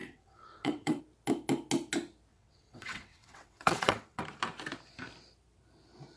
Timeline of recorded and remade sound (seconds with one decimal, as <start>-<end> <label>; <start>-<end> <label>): 0.0-1.0 remade; 1.0-2.3 recorded; 2.3-4.2 remade; 4.2-6.2 recorded